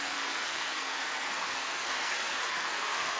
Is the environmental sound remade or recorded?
remade